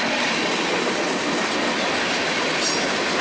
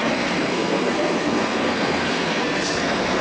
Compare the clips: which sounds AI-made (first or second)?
second